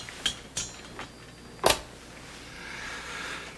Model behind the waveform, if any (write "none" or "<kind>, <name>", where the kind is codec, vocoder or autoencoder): none